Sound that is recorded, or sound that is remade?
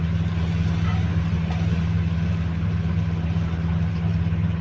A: recorded